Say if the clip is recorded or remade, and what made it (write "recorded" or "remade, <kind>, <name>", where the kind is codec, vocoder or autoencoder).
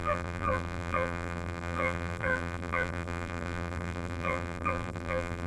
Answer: remade, vocoder, BigVGAN v2